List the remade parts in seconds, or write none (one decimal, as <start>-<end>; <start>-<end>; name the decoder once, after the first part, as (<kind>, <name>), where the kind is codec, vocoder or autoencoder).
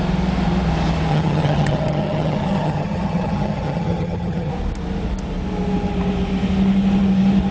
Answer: 1.1-4.5 (vocoder, HiFi-GAN)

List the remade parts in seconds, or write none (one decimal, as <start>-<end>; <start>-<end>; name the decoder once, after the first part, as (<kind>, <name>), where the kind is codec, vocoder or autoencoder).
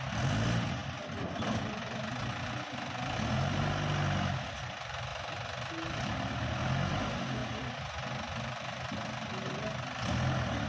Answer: none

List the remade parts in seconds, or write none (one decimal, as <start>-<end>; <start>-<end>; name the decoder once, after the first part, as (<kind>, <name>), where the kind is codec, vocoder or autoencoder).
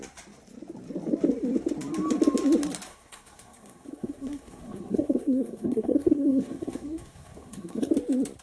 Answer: 2.9-7.9 (codec, SNAC)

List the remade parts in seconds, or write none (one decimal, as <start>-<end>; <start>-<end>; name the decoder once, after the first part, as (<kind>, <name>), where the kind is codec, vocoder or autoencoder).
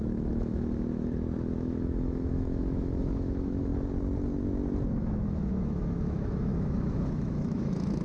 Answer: 0.0-3.7 (autoencoder, DAC-VAE); 5.0-8.0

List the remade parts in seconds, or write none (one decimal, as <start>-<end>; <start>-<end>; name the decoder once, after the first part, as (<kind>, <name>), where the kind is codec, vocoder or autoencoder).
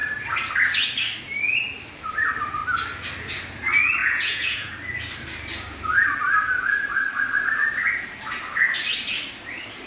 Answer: 4.0-4.7 (vocoder, Vocos)